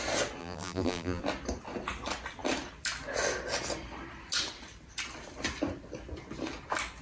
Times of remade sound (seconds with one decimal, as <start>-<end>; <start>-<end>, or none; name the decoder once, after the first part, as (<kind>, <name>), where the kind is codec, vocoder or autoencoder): 0.4-1.2 (vocoder, BigVGAN v2)